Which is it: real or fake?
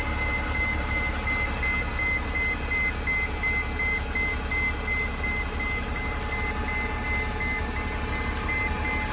real